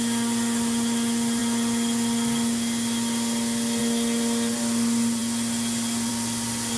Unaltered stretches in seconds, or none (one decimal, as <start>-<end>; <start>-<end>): 0.0-6.8